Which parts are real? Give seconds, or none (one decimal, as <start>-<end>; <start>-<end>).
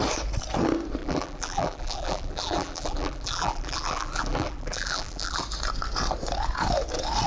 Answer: 0.0-1.0; 5.4-7.3